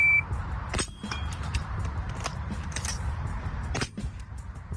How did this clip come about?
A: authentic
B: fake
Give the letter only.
B